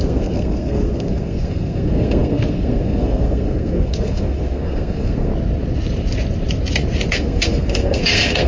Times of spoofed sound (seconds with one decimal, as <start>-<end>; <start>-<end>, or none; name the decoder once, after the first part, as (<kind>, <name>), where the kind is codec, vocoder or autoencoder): 0.0-5.3 (codec, SNAC); 7.1-8.5